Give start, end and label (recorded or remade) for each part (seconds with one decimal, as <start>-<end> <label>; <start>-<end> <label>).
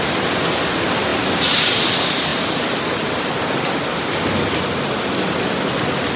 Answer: 0.0-6.2 recorded